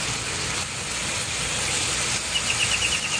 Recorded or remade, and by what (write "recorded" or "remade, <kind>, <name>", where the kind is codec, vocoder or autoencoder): recorded